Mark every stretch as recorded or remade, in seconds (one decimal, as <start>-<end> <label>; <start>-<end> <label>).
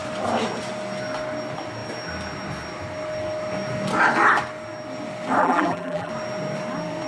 0.0-5.4 recorded; 5.4-6.1 remade; 6.1-7.1 recorded